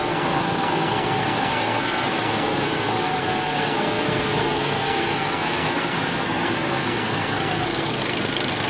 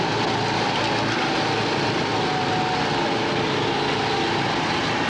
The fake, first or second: first